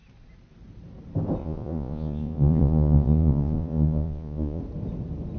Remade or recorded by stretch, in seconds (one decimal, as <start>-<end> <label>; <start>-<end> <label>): 0.0-1.4 recorded; 1.4-4.6 remade; 4.6-5.4 recorded